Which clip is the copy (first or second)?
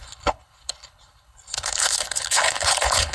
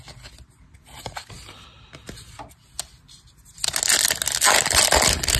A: first